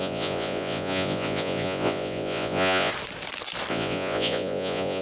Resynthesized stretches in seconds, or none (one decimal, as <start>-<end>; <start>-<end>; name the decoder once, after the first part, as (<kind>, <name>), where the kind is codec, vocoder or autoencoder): 0.0-2.9 (vocoder, Vocos); 3.7-5.0

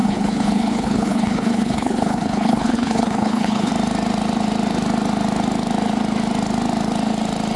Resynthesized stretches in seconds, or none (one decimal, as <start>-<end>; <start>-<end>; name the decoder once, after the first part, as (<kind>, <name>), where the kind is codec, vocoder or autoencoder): 0.0-3.7 (codec, HILCodec)

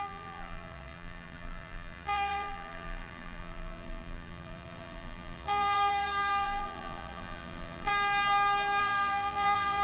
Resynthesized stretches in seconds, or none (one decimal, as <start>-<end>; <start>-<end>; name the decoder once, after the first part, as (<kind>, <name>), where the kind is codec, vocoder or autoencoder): 0.0-7.9 (vocoder, BigVGAN v2); 8.8-9.8

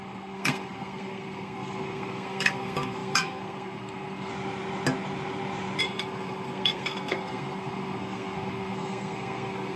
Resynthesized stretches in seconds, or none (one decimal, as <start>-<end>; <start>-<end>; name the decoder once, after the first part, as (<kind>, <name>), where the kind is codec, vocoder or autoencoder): 0.0-4.3 (codec, SNAC); 5.8-9.8

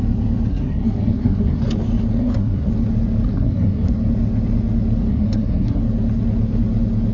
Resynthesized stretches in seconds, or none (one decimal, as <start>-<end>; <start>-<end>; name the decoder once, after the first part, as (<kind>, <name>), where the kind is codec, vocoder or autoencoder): 0.5-1.6 (codec, SNAC); 2.2-2.7; 3.3-3.9; 5.1-5.8